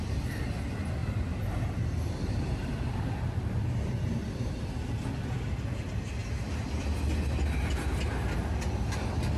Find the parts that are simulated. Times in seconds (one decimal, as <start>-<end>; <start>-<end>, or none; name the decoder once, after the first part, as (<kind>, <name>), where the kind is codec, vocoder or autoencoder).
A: 1.0-2.9 (vocoder, BigVGAN v2); 4.2-4.7